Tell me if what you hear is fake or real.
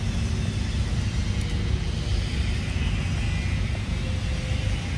real